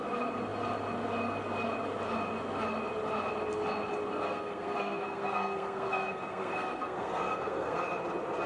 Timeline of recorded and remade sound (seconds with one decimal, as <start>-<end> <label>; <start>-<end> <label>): 0.0-4.1 recorded; 4.1-7.8 remade; 7.8-8.5 recorded